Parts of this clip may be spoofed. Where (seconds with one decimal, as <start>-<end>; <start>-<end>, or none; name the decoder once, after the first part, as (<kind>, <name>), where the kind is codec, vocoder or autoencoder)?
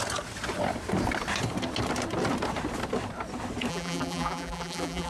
3.7-5.1 (vocoder, BigVGAN v2)